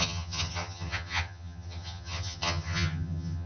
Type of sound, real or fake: fake